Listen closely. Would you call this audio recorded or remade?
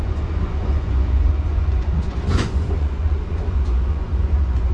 remade